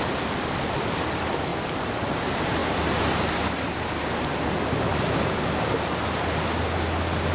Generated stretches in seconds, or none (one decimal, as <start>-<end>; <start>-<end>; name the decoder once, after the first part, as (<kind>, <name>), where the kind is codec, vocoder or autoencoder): none